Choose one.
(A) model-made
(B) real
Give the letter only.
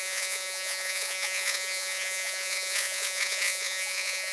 A